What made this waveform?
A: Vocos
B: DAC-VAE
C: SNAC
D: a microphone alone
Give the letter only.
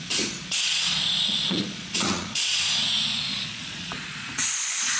A